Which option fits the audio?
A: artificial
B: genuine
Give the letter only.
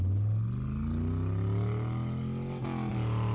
B